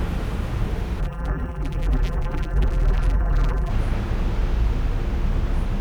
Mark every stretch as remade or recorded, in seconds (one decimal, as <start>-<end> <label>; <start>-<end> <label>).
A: 0.0-1.0 recorded; 1.0-3.7 remade; 3.7-5.8 recorded